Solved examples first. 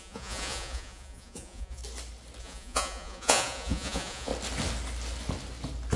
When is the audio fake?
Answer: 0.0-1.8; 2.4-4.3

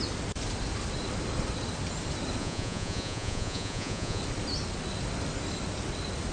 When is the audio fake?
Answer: 2.4-4.2